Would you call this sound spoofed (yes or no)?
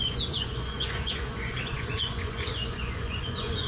yes